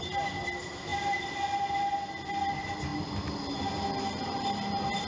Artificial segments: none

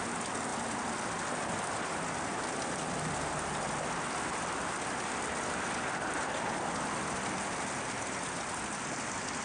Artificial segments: none

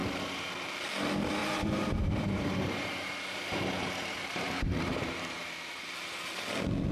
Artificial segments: 0.0-0.5; 1.4-5.5